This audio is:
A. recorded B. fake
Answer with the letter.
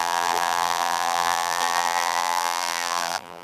B